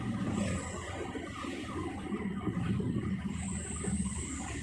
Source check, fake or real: real